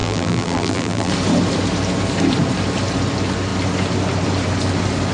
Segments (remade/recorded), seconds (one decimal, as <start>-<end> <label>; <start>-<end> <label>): 0.0-1.1 remade; 1.1-5.1 recorded